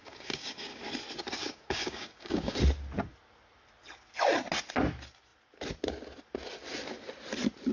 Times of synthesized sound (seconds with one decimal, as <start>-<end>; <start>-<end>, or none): 0.0-0.8; 1.4-2.6